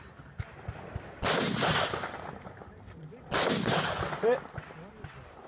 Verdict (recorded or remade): recorded